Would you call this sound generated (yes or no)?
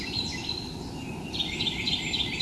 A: no